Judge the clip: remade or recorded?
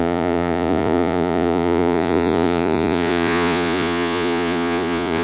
remade